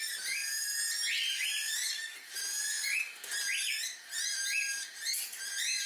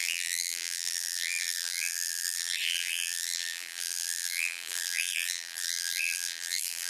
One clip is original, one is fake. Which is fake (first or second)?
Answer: second